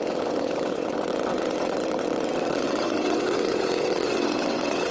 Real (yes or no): no